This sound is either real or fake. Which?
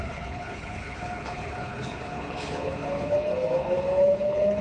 fake